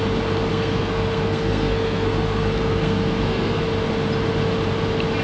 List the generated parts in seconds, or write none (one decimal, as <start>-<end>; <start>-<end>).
0.5-3.6